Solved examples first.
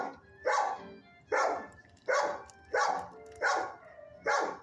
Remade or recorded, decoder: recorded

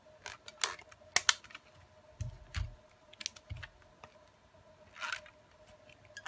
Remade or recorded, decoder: recorded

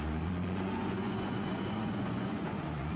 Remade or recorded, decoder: remade, vocoder, Vocos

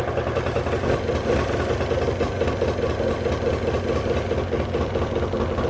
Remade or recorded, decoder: recorded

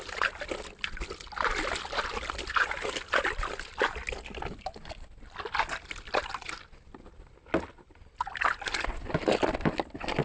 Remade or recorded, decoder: recorded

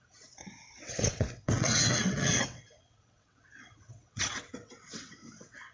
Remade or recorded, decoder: remade, vocoder, WaveNeXt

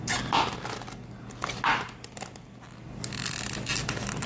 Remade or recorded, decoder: recorded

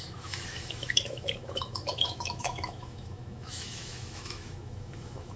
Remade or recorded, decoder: remade, autoencoder, DAC-VAE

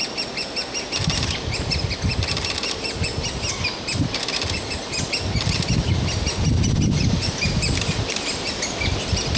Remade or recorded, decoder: recorded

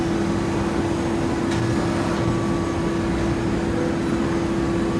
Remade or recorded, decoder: recorded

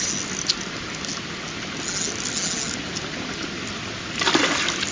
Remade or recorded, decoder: recorded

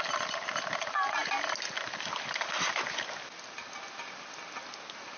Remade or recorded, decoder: recorded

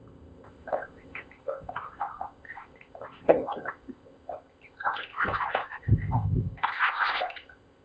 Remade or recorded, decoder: remade, codec, ZipCodec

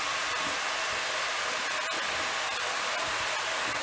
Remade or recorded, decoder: recorded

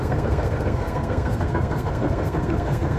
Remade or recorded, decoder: remade, codec, SNAC